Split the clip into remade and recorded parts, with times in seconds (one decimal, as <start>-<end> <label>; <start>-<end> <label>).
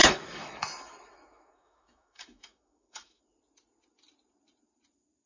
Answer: 0.0-3.2 remade; 3.2-5.3 recorded